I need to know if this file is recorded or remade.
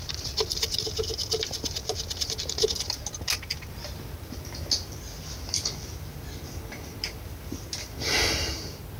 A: recorded